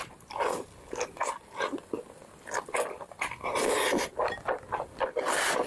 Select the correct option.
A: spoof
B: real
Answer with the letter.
B